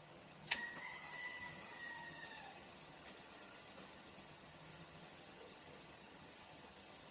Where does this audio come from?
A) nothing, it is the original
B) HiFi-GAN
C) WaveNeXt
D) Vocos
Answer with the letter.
B